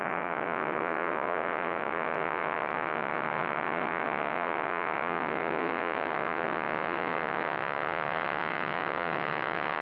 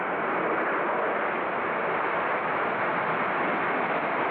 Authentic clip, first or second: second